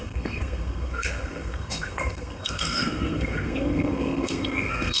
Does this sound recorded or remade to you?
remade